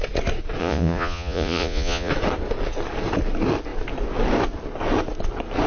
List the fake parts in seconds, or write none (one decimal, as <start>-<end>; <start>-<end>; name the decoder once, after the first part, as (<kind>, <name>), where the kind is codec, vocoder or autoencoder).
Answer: 0.6-2.1 (vocoder, Vocos)